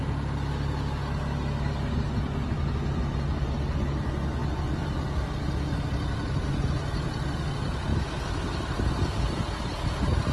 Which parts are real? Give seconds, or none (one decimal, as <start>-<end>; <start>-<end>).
0.0-10.3